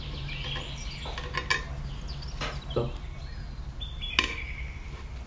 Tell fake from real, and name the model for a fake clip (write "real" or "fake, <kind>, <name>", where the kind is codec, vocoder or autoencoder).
real